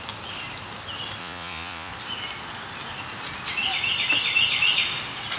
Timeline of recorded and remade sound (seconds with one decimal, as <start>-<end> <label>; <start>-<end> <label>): 0.0-1.2 recorded; 1.2-1.9 remade; 1.9-5.4 recorded